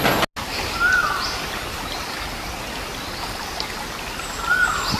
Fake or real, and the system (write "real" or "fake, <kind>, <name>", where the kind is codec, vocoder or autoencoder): real